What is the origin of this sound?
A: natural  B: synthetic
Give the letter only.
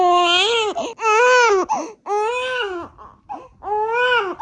A